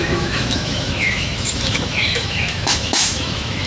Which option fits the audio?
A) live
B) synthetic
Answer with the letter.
B